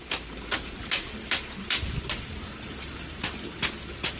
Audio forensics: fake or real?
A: real